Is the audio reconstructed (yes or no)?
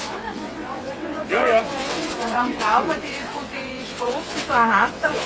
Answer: yes